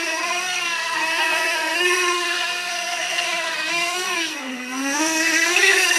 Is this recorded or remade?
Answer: remade